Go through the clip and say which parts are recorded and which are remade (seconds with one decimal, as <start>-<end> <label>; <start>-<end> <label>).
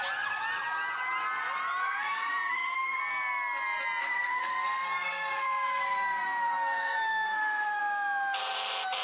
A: 0.0-1.8 recorded; 1.8-3.0 remade; 3.0-4.0 recorded; 4.0-7.8 remade; 7.8-9.0 recorded